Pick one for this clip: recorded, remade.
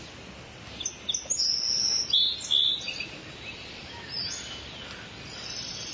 recorded